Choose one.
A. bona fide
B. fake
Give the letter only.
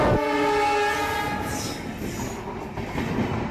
A